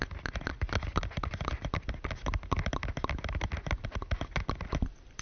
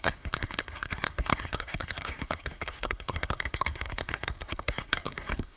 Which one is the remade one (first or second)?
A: second